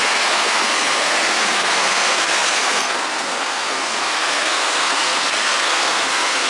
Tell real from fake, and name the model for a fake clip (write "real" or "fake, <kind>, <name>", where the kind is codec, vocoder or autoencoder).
fake, codec, SNAC